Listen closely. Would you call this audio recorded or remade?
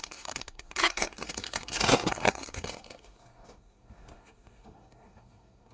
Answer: remade